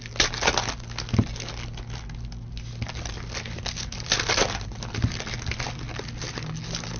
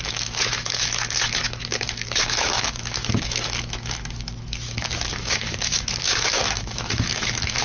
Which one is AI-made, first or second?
second